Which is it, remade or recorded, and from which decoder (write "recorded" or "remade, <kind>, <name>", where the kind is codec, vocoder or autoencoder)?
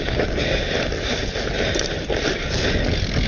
recorded